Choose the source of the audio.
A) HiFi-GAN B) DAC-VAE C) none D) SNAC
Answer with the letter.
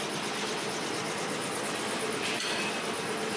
C